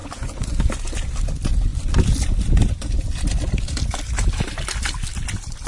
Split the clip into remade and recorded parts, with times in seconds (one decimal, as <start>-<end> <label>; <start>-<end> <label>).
0.0-0.6 remade; 0.6-5.7 recorded